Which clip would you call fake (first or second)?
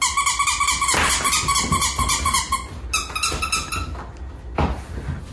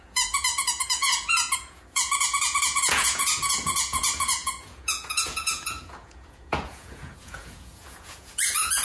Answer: second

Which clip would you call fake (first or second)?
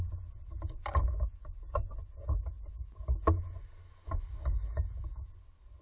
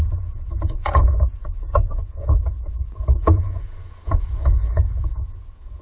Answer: second